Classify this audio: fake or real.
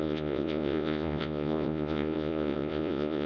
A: fake